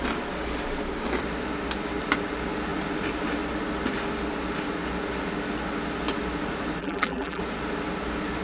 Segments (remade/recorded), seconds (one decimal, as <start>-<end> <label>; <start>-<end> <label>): 0.0-6.8 recorded; 6.8-7.4 remade; 7.4-8.4 recorded